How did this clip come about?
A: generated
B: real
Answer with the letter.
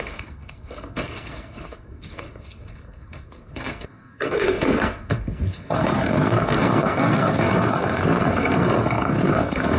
A